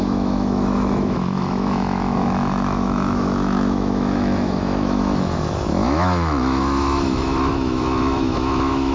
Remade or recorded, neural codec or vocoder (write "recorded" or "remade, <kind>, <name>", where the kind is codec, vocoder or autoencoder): remade, autoencoder, DAC-VAE